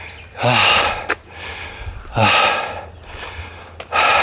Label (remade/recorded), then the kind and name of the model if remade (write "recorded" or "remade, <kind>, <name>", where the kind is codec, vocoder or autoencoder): recorded